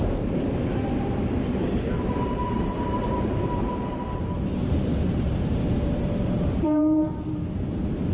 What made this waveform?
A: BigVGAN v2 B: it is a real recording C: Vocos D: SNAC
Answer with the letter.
A